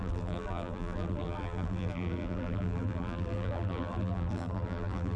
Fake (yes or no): yes